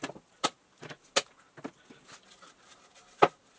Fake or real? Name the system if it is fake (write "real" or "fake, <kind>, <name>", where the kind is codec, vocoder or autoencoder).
real